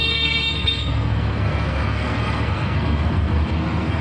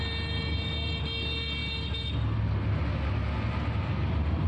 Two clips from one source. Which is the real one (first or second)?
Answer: second